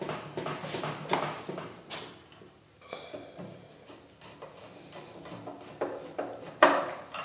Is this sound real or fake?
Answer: real